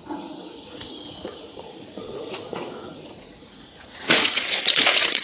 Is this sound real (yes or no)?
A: no